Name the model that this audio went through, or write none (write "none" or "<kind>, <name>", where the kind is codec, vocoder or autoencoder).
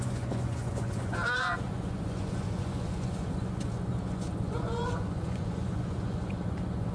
vocoder, Vocos